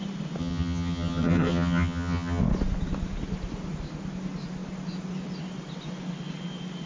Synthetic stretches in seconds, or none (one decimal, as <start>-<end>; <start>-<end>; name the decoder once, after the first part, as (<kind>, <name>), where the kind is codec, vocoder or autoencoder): 0.4-2.4 (vocoder, HiFi-GAN)